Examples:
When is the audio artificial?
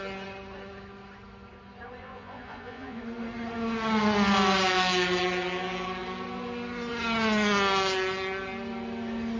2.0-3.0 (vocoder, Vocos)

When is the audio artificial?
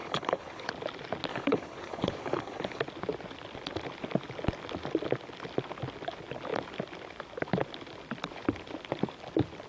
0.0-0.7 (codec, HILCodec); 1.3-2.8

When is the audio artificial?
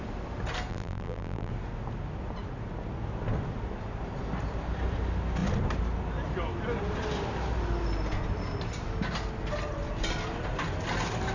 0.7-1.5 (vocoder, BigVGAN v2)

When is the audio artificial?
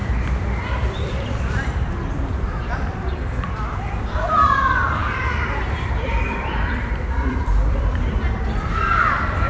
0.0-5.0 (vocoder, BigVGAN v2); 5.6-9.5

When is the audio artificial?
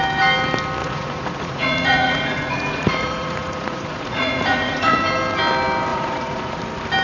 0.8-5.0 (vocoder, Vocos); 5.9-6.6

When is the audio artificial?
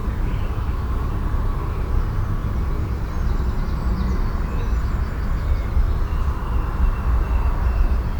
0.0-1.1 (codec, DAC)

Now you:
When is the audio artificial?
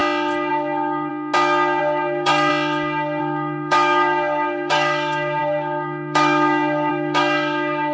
0.5-1.1 (codec, DAC); 1.8-2.5; 3.2-7.9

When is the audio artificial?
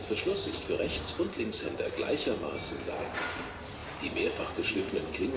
0.0-0.6 (vocoder, BigVGAN v2); 2.5-5.4